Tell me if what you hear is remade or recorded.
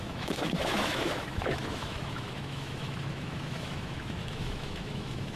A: remade